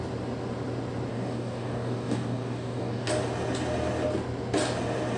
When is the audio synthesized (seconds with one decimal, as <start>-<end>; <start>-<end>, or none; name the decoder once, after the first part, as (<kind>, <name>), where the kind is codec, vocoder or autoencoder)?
1.1-3.1 (codec, DAC)